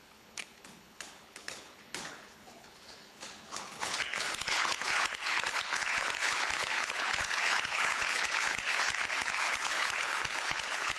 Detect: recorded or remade remade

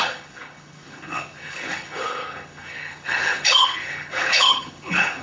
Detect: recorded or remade remade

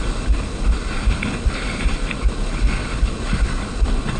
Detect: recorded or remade remade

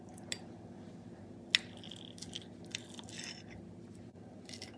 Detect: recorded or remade recorded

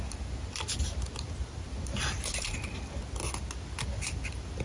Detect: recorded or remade recorded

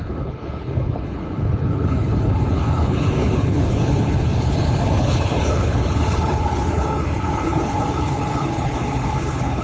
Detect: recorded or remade remade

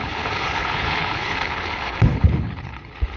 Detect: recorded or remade remade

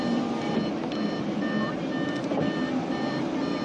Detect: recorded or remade recorded